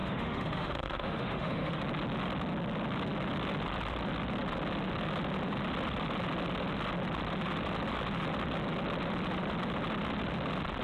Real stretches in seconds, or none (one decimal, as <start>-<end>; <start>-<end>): 1.8-10.8